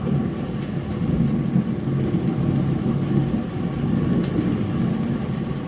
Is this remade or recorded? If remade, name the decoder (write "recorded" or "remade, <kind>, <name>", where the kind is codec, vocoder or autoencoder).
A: recorded